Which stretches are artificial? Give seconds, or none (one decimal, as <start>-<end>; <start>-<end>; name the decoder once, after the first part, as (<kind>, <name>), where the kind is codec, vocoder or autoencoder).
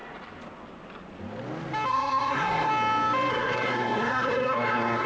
1.9-2.7 (codec, SNAC); 3.3-5.1